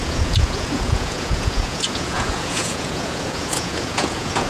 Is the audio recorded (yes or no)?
no